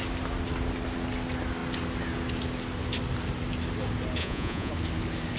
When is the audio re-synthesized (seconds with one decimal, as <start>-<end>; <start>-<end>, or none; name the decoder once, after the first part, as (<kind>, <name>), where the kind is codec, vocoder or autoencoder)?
4.2-4.7 (vocoder, Vocos)